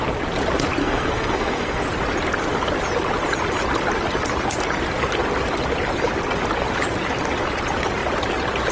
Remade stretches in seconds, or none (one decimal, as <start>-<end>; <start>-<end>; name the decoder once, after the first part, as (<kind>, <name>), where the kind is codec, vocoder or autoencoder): 0.8-1.8 (codec, SNAC)